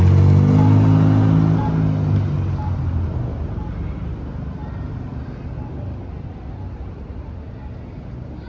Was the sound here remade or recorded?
recorded